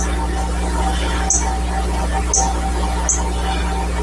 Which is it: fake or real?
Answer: real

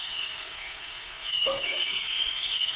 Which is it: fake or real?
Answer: fake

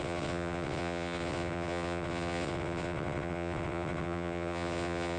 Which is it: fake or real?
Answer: fake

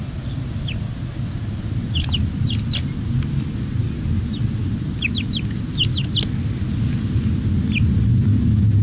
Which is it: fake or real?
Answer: real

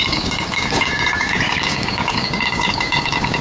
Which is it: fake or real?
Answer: fake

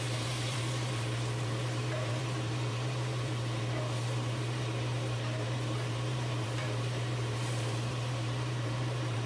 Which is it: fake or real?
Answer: fake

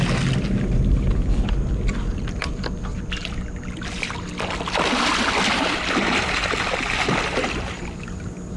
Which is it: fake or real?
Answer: real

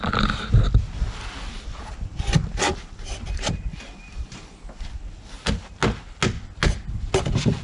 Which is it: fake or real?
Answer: real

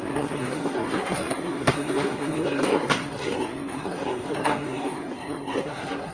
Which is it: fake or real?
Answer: fake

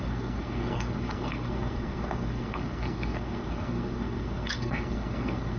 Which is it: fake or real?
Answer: fake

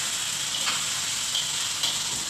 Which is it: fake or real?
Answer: real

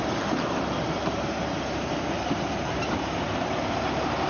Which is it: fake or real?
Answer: fake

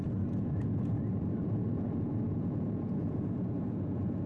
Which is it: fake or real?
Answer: fake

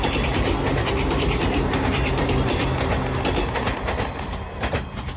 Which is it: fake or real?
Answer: real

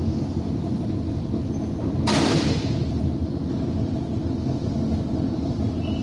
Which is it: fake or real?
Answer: real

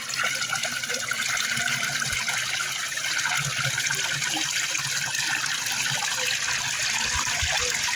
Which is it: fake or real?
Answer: fake